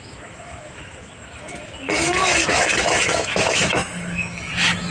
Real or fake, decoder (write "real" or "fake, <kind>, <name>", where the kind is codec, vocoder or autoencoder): fake, autoencoder, DAC-VAE